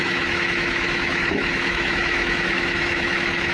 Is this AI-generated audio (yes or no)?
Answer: yes